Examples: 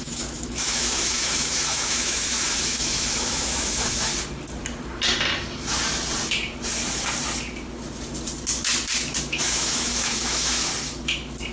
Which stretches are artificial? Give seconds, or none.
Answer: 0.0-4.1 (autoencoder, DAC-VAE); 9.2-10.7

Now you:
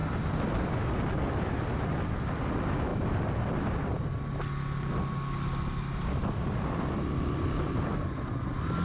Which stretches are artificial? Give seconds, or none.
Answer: none